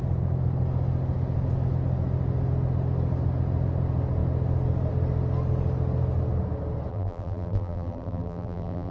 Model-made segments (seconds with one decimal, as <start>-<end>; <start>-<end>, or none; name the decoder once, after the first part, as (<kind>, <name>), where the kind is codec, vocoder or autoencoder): 6.9-8.9 (vocoder, BigVGAN v2)